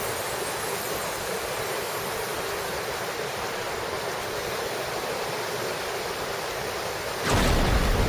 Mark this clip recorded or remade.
recorded